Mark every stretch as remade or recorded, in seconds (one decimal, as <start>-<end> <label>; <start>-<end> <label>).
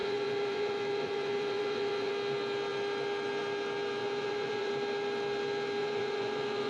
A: 0.0-2.1 remade; 2.1-4.0 recorded; 4.0-4.7 remade; 4.7-5.8 recorded; 5.8-6.7 remade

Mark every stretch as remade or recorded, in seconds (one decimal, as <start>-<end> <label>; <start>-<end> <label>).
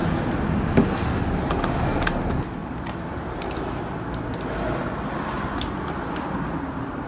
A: 0.0-2.6 recorded; 2.6-3.8 remade; 3.8-7.1 recorded